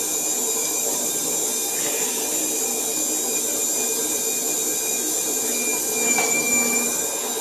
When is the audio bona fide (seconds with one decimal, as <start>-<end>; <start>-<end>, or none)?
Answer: 0.0-0.6; 1.1-7.4